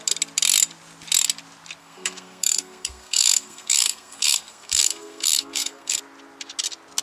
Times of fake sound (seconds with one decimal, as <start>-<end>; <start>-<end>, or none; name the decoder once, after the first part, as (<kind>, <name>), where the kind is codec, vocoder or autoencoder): 1.8-6.0 (codec, SNAC)